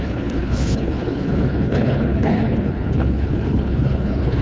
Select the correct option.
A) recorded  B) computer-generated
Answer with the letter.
B